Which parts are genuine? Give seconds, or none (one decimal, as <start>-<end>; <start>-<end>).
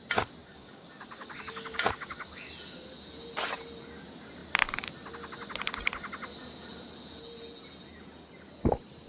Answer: 0.0-0.4; 2.5-9.1